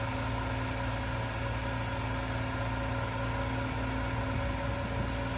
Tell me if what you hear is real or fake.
real